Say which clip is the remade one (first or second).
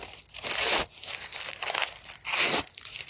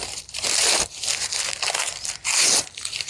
second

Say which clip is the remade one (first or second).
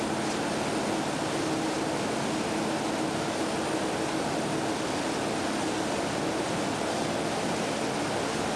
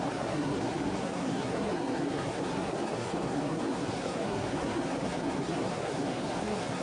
second